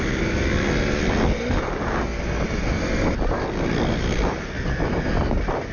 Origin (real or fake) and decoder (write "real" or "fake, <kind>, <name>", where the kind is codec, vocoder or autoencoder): real